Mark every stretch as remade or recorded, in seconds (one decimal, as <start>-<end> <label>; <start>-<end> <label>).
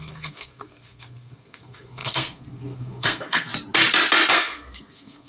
0.0-3.5 remade; 3.5-4.3 recorded; 4.3-5.3 remade